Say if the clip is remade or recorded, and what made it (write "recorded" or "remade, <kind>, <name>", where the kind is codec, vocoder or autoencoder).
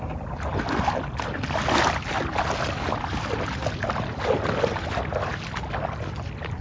recorded